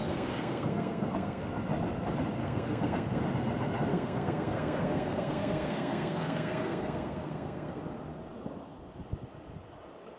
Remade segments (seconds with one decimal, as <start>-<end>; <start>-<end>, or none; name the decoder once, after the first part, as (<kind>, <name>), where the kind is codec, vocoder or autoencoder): 0.0-1.5 (codec, SNAC); 2.4-3.2; 3.9-7.8

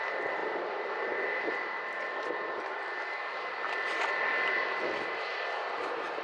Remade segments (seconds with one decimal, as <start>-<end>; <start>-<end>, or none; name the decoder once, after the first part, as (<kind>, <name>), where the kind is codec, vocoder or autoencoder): none

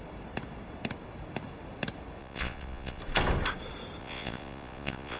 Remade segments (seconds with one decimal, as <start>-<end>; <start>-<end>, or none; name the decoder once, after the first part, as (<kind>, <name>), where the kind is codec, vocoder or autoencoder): 2.2-3.0 (vocoder, Vocos); 4.0-5.2

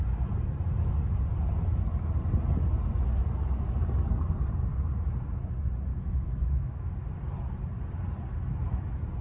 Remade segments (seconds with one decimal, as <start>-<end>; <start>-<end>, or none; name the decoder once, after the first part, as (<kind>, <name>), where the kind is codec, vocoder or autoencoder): 5.9-6.9 (autoencoder, DAC-VAE)

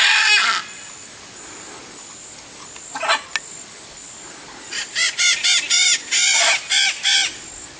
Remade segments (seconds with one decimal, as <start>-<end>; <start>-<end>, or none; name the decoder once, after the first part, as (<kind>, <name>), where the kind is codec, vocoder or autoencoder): none

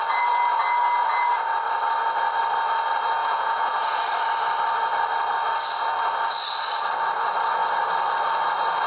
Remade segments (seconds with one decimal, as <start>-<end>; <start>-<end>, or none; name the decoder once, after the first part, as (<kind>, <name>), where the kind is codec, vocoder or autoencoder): 3.2-4.0 (vocoder, Vocos)